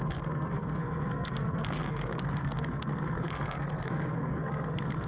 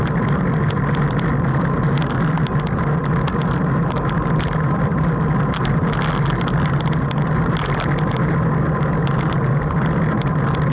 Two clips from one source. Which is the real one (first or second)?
second